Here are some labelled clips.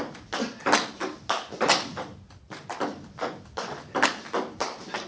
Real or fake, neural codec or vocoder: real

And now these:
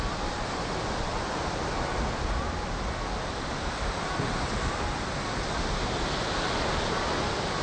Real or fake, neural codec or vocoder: real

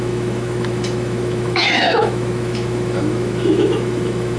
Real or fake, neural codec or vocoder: fake, autoencoder, DAC-VAE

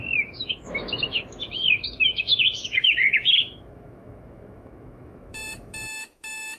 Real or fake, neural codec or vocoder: fake, autoencoder, DAC-VAE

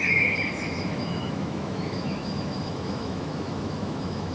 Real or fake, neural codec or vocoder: fake, autoencoder, DAC-VAE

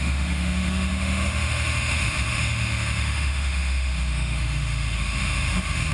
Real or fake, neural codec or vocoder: fake, autoencoder, DAC-VAE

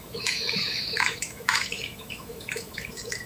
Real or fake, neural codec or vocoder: fake, autoencoder, DAC-VAE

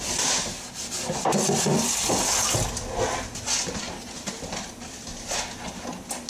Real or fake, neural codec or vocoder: real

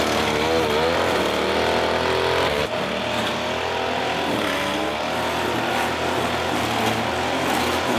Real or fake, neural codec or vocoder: real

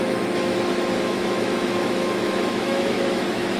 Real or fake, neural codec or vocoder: fake, autoencoder, DAC-VAE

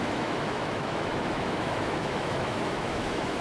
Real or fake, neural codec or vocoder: fake, autoencoder, DAC-VAE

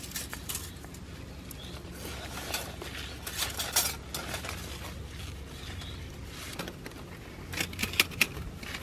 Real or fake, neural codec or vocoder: real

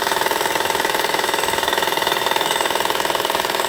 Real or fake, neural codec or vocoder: fake, autoencoder, DAC-VAE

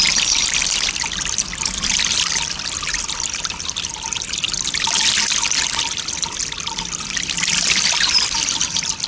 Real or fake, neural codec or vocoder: real